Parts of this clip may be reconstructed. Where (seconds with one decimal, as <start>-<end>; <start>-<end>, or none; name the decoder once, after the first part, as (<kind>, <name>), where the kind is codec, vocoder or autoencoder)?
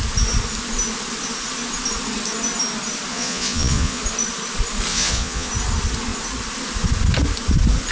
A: 3.1-4.0 (vocoder, Vocos); 4.9-5.5